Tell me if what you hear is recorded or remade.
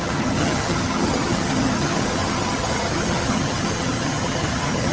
remade